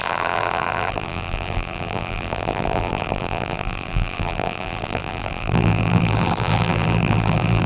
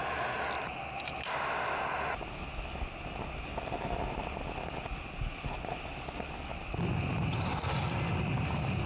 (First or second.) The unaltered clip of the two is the second